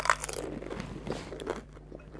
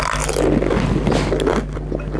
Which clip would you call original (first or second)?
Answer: second